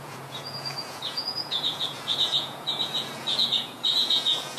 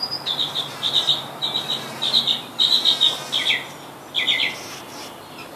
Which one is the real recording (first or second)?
second